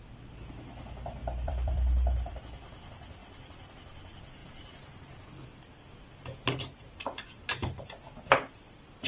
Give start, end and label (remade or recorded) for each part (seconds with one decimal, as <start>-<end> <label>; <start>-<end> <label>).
0.0-1.2 recorded; 1.2-2.4 remade; 2.4-3.2 recorded; 3.2-3.7 remade; 3.7-9.1 recorded